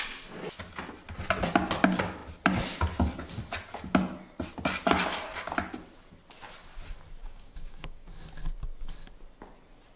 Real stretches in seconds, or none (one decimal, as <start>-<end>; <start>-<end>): 0.0-7.2; 8.1-10.0